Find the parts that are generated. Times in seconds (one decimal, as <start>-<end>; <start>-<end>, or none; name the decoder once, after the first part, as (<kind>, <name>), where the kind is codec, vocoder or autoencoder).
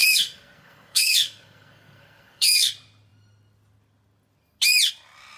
0.0-2.7 (codec, SNAC)